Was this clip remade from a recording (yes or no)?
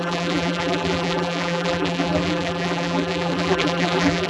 yes